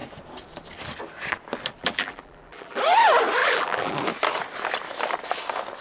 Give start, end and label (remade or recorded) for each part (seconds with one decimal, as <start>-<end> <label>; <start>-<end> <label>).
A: 0.0-1.8 recorded; 1.8-2.8 remade; 2.8-3.4 recorded; 3.4-3.9 remade; 3.9-5.8 recorded